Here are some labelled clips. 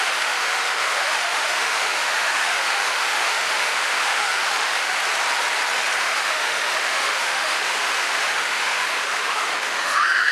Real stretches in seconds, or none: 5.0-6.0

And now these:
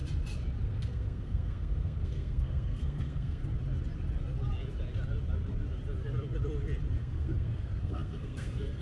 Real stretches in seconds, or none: 0.0-0.6; 3.4-7.0

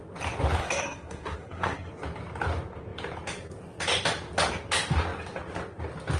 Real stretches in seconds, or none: 0.0-0.6; 1.9-6.2